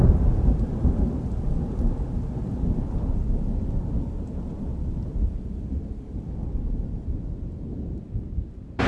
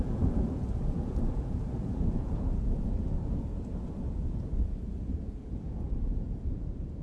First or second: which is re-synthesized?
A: second